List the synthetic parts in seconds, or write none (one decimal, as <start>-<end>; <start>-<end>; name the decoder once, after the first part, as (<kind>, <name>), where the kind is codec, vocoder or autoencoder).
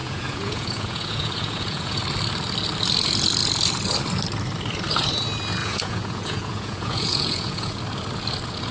0.0-2.0 (vocoder, Vocos); 5.6-7.8